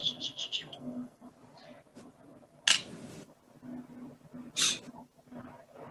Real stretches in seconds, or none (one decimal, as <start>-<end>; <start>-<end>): 1.3-5.9